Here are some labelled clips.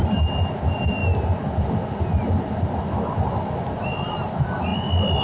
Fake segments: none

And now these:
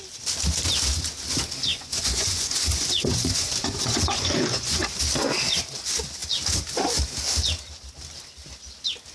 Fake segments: 1.7-5.0 (vocoder, Vocos)

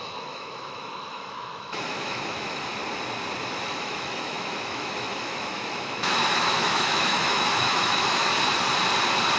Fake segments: 0.0-2.8 (autoencoder, DAC-VAE); 3.5-8.3

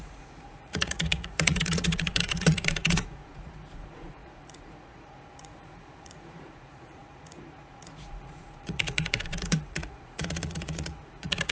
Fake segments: 0.0-11.5 (vocoder, Vocos)

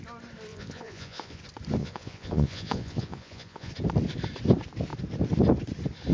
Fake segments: 0.5-1.4 (vocoder, Vocos); 1.8-3.7

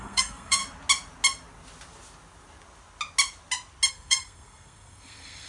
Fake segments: 0.0-0.6 (codec, SNAC); 3.9-5.5

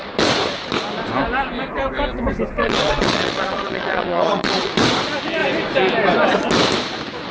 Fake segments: 2.6-4.7 (vocoder, WaveNeXt)